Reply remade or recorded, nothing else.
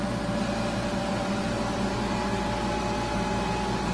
recorded